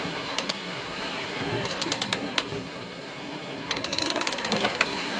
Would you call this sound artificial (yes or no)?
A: yes